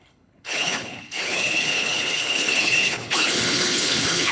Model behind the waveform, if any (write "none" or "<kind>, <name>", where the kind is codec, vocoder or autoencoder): codec, HILCodec